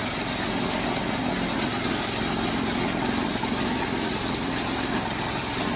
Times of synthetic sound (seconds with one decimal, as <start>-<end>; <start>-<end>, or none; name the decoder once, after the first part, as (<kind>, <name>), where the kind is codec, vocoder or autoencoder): none

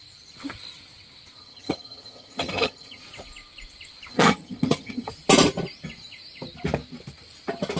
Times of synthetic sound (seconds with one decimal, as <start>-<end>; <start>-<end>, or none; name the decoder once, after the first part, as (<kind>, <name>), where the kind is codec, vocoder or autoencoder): 1.4-3.0 (vocoder, HiFi-GAN); 4.1-5.1

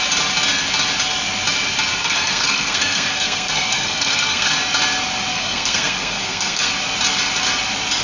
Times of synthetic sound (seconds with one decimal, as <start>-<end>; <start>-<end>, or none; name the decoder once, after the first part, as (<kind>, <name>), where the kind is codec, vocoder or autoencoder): 2.0-4.5 (codec, SNAC); 5.3-6.7

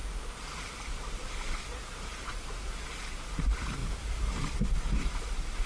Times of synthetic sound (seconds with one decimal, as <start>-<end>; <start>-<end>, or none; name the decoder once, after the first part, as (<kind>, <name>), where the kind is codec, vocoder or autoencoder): 3.8-4.5 (vocoder, BigVGAN v2)

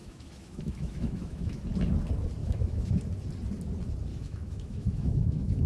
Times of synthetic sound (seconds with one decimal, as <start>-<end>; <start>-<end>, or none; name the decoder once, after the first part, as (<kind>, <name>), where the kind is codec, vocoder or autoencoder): 0.0-1.6 (autoencoder, DAC-VAE); 2.4-3.0; 4.1-5.7

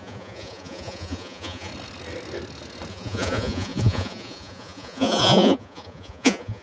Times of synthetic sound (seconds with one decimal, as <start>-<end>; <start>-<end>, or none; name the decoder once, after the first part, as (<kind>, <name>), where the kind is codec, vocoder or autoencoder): 0.0-1.7 (vocoder, Vocos); 2.9-6.6

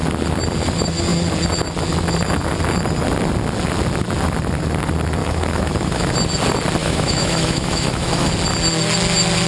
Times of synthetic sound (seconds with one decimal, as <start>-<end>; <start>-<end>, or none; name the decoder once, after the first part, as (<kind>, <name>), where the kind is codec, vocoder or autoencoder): 5.2-6.1 (autoencoder, DAC-VAE); 6.8-8.3